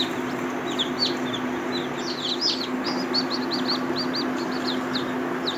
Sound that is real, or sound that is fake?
real